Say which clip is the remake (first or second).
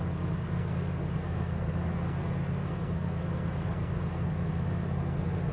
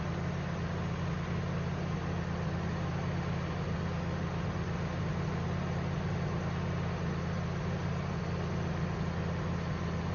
first